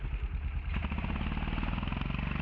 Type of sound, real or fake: real